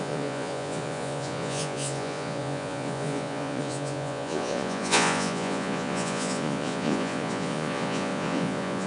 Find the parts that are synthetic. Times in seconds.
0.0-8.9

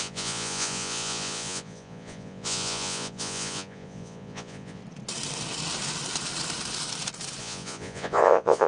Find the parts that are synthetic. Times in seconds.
0.0-4.8; 7.4-8.7